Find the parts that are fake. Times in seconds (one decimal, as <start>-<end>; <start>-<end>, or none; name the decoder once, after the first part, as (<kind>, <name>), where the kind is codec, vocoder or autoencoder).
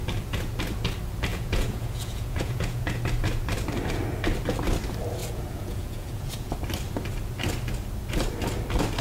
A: 1.3-3.0 (vocoder, Vocos); 5.2-6.5